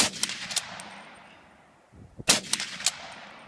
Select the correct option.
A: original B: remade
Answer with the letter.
A